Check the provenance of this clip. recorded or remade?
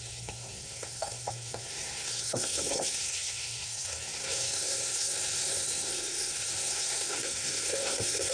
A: remade